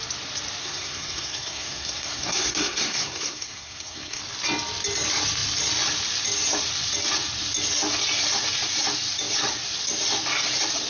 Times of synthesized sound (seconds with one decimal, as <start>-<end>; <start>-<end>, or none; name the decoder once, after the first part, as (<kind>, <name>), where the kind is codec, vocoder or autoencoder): 0.6-4.2 (codec, SNAC)